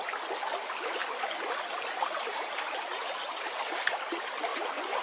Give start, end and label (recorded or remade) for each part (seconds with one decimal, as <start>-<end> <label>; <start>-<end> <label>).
0.0-4.5 recorded; 4.5-5.0 remade